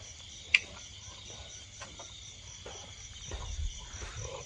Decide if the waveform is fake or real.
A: real